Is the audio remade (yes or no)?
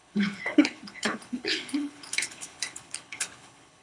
yes